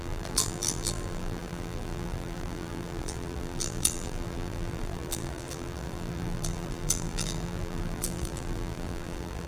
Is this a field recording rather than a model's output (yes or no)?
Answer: no